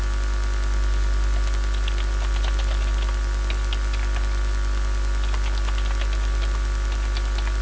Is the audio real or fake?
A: real